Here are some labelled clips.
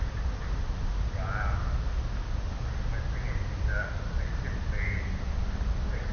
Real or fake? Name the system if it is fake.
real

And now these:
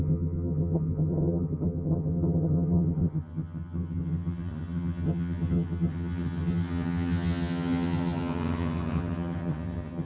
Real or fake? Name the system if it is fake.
fake, vocoder, HiFi-GAN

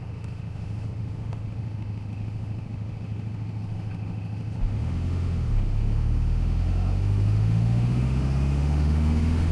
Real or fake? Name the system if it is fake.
fake, autoencoder, DAC-VAE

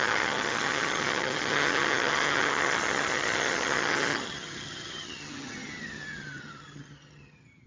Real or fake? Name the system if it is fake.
fake, vocoder, HiFi-GAN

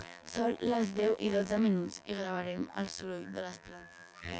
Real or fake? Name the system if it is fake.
fake, vocoder, BigVGAN v2